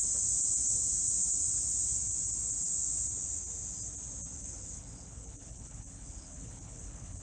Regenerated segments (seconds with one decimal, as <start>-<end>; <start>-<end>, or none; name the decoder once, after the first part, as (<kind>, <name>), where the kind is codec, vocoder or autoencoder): 4.3-7.2 (codec, HILCodec)